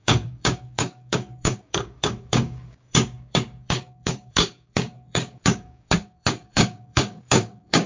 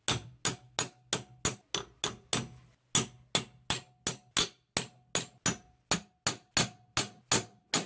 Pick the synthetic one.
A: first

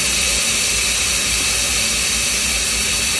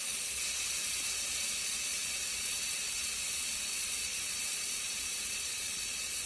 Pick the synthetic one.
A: second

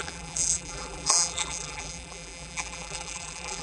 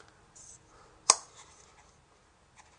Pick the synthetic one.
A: first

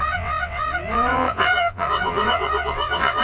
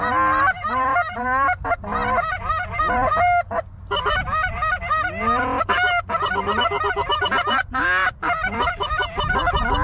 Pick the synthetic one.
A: first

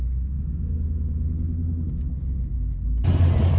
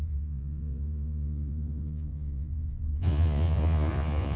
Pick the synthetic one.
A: second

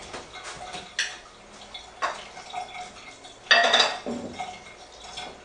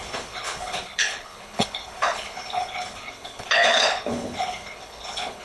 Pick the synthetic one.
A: second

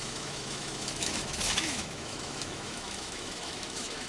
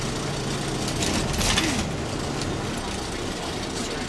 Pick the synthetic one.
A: first